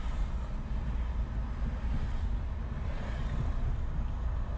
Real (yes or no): yes